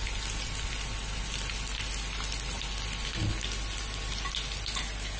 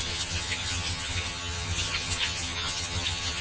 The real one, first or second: first